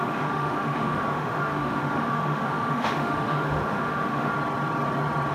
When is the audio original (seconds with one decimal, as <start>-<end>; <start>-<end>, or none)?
4.3-5.3